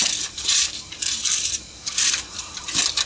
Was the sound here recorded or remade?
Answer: recorded